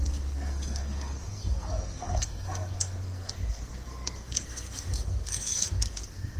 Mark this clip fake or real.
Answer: fake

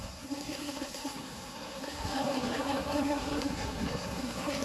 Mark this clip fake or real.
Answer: fake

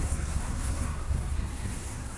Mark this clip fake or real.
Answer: fake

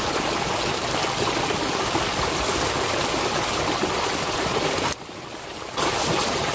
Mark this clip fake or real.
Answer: real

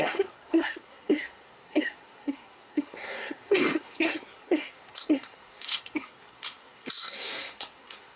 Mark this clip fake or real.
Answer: fake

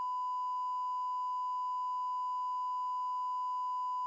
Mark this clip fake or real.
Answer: real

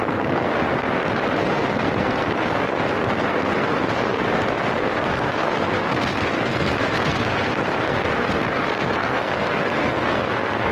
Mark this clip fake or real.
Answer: fake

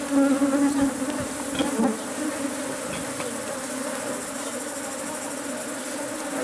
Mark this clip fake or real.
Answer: real